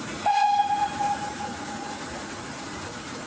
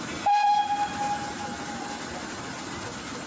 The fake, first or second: first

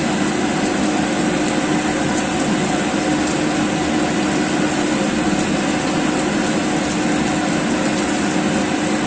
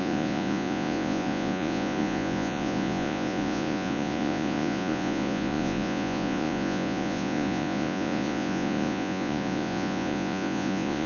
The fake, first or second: second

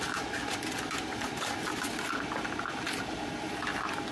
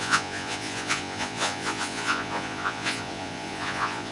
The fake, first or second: second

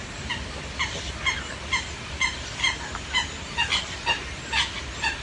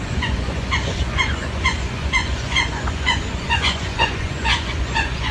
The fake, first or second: second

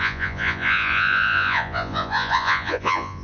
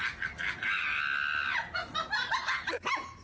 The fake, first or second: first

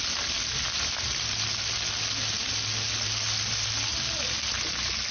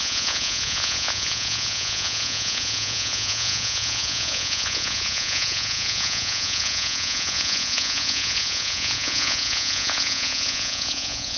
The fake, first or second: second